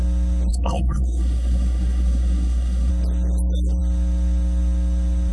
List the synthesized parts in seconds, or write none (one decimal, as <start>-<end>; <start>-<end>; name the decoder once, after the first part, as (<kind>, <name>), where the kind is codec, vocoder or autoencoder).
0.5-2.9 (codec, SNAC)